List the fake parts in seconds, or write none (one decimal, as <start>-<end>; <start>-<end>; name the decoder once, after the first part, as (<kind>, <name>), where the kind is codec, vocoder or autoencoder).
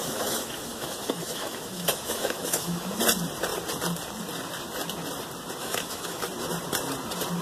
0.0-3.0 (autoencoder, DAC-VAE); 5.6-6.2